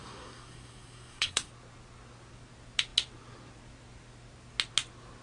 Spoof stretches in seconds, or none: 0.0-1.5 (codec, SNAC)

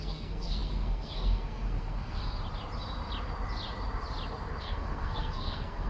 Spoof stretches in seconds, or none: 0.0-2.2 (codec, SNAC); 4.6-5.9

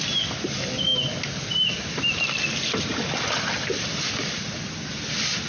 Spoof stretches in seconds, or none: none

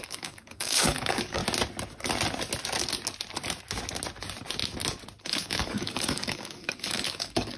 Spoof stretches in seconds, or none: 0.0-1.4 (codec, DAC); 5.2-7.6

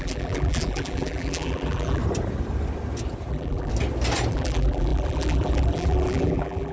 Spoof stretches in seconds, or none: 0.0-2.0 (vocoder, BigVGAN v2); 3.3-3.7; 4.3-6.7

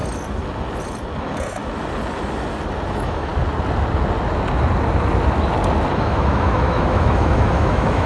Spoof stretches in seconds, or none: 1.2-1.6 (autoencoder, DAC-VAE); 2.9-3.3; 5.9-8.1